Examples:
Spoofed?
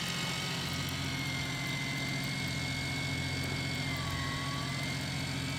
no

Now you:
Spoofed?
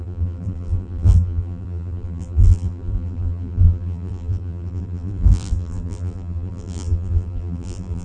yes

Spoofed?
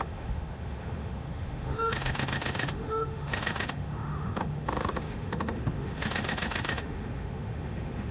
yes